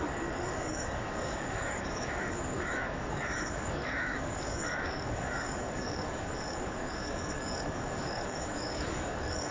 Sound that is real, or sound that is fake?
fake